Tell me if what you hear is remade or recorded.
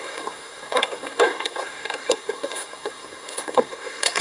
remade